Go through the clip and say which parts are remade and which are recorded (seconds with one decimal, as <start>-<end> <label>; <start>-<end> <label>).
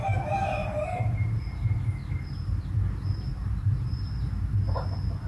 0.0-0.6 recorded; 0.6-1.4 remade; 1.4-2.0 recorded; 2.0-2.6 remade; 2.6-3.3 recorded; 3.3-4.1 remade; 4.1-5.3 recorded